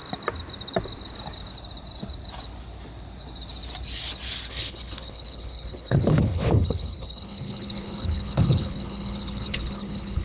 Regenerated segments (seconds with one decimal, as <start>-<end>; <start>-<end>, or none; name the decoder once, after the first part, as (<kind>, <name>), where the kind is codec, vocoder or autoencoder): 4.5-10.2 (codec, HILCodec)